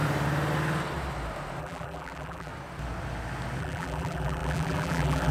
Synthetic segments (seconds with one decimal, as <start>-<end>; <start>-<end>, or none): 1.6-2.5; 3.6-5.3